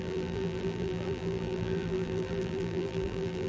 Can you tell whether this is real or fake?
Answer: fake